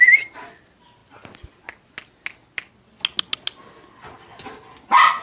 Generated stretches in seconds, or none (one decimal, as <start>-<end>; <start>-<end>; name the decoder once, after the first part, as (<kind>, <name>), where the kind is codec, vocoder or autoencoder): none